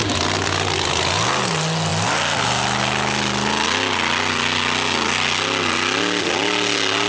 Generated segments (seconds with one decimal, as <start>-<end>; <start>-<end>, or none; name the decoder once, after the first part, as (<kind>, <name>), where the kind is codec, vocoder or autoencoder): 0.0-1.2 (vocoder, BigVGAN v2)